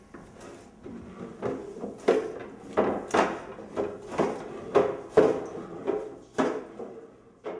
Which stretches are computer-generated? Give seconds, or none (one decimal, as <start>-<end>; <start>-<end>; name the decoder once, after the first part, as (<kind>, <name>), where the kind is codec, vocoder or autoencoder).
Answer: none